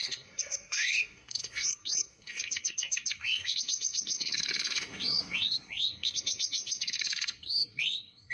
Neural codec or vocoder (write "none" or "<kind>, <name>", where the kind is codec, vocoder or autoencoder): codec, SNAC